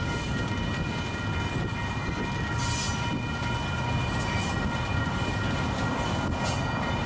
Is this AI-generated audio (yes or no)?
no